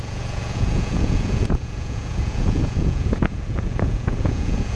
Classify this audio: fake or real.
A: fake